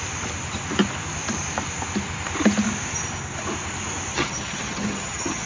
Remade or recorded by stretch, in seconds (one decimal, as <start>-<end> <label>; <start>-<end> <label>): 0.0-4.1 recorded; 4.1-5.5 remade